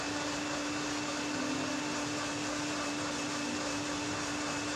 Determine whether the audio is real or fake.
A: real